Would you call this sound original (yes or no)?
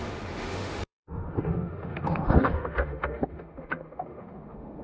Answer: no